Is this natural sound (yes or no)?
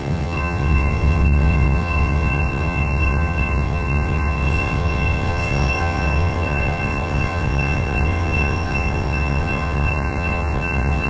no